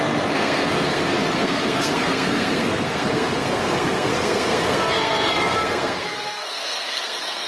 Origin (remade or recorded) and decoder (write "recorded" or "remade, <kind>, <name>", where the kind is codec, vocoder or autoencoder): remade, codec, SNAC